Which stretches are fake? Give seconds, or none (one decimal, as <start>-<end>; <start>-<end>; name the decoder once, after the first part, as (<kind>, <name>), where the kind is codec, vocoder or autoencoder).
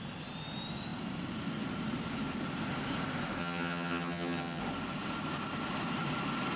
3.4-4.6 (vocoder, HiFi-GAN)